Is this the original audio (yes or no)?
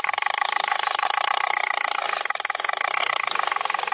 yes